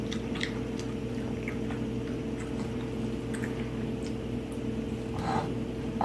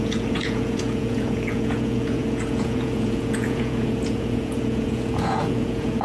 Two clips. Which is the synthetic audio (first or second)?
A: second